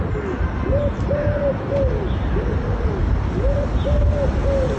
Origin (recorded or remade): recorded